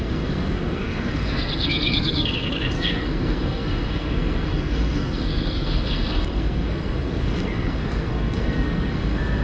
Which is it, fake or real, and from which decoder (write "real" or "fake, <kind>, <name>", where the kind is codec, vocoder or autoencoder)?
fake, codec, SNAC